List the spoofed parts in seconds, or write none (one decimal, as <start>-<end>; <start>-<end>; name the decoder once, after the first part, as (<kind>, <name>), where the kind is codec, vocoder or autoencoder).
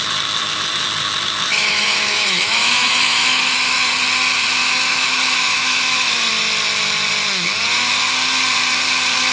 1.5-3.9 (autoencoder, DAC-VAE); 4.6-6.3